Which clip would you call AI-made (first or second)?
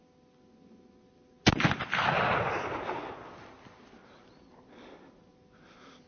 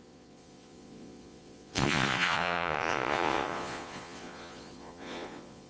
second